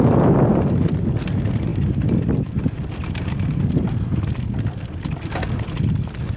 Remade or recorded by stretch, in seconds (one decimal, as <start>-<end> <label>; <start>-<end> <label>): 0.0-6.4 recorded

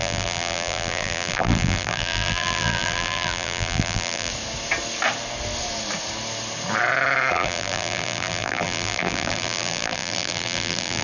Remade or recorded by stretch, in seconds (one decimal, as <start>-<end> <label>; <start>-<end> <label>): 0.0-4.3 remade; 4.3-7.3 recorded; 7.3-11.0 remade

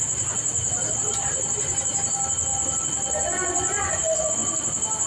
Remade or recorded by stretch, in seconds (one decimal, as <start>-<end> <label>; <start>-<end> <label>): 0.0-5.1 recorded